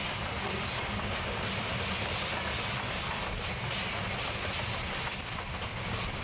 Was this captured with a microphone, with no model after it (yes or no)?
yes